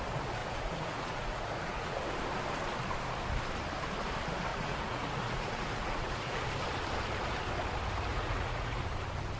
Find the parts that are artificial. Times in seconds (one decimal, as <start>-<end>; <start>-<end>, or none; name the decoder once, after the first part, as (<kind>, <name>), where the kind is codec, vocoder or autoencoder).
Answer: 0.4-2.0 (vocoder, Vocos); 4.5-6.4; 8.1-8.8

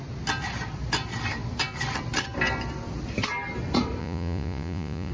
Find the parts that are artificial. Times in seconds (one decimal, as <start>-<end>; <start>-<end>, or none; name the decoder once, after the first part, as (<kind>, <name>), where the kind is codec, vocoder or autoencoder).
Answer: 4.0-5.1 (vocoder, Vocos)